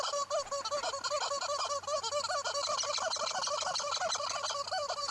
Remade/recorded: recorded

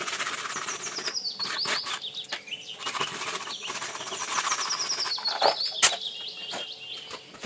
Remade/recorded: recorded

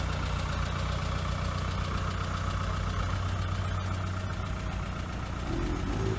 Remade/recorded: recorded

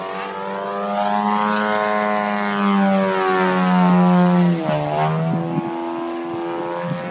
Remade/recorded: recorded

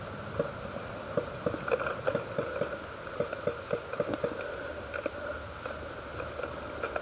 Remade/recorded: recorded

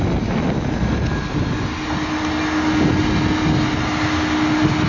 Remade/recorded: recorded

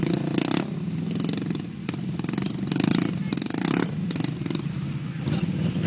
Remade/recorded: recorded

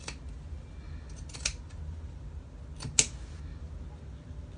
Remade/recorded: recorded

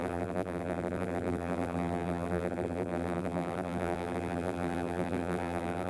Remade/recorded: remade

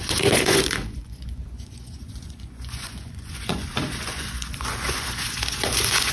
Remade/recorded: remade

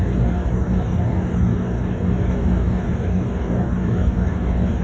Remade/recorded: remade